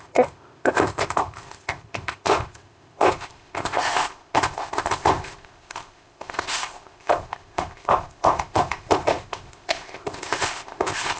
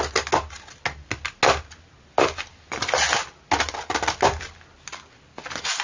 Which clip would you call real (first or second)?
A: second